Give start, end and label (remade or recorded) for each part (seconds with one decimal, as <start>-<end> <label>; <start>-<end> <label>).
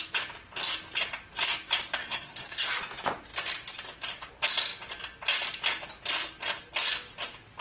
0.0-2.0 recorded; 2.0-2.7 remade; 2.7-7.6 recorded